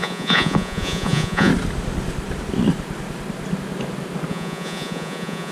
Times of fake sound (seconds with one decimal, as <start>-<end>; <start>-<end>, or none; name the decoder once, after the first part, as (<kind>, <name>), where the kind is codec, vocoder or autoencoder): 0.0-1.5 (vocoder, Vocos); 4.3-5.5